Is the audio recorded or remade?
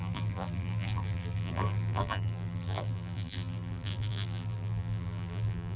remade